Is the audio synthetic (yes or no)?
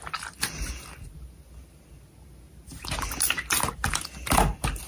no